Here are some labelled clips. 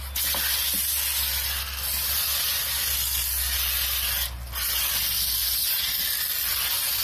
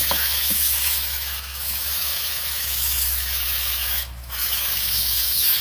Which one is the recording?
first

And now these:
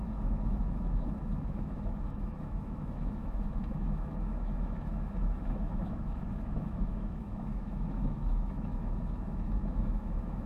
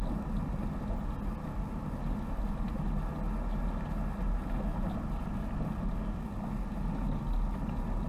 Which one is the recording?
second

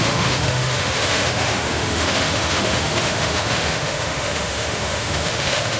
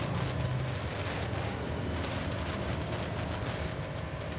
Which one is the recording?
second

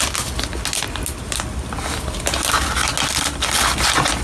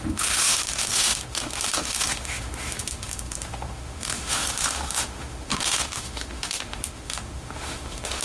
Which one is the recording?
first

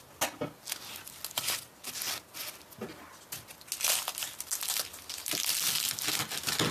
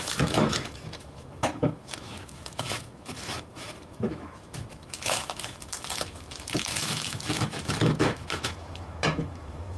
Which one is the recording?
first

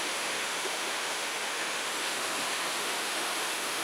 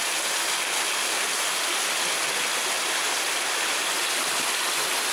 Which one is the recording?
second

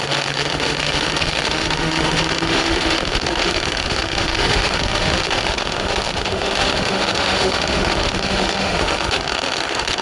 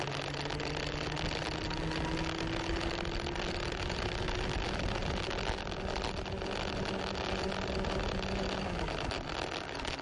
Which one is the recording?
second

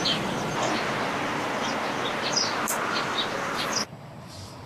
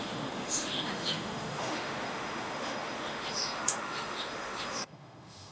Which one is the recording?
first